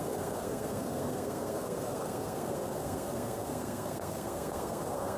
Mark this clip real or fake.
fake